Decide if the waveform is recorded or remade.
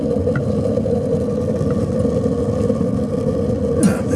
recorded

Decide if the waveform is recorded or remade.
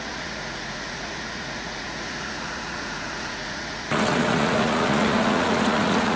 remade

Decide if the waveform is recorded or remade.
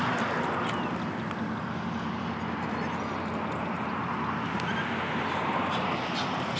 recorded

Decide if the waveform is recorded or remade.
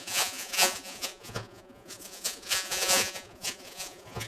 remade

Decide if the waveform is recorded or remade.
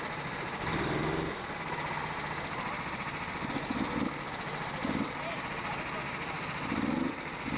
recorded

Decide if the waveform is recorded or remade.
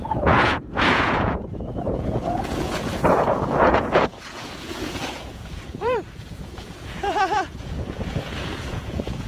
remade